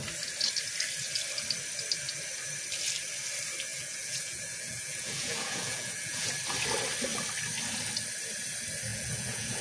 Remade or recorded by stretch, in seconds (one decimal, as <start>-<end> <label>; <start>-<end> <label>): 0.0-3.7 recorded; 3.7-6.3 remade; 6.3-8.9 recorded; 8.9-9.6 remade